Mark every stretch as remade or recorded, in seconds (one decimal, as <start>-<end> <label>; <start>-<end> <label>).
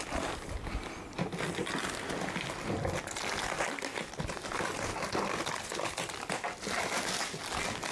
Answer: 0.0-7.9 recorded